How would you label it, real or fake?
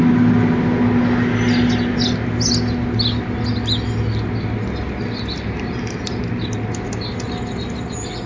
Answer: real